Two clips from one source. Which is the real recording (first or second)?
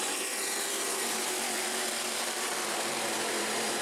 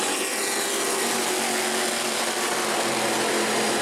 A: second